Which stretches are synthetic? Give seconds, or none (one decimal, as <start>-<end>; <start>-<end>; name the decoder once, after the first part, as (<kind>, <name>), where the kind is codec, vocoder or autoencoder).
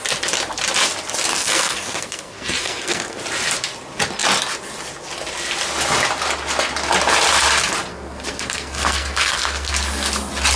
1.3-3.2 (codec, SNAC); 7.9-9.7